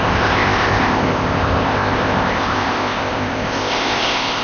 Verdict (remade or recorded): remade